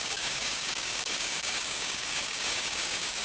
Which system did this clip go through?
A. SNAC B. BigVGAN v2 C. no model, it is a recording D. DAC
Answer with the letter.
D